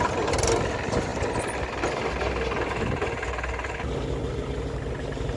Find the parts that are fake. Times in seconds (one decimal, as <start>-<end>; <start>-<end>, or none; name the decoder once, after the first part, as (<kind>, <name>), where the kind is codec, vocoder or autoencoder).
none